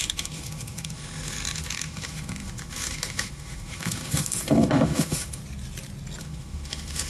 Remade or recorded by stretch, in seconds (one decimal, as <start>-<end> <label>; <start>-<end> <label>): 0.0-5.4 remade; 5.4-6.2 recorded; 6.2-7.1 remade